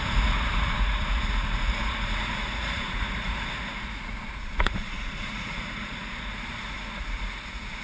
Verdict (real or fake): fake